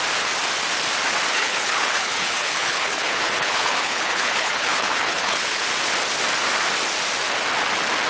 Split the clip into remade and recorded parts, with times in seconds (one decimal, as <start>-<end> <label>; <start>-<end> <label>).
0.0-1.3 recorded; 1.3-5.6 remade; 5.6-8.1 recorded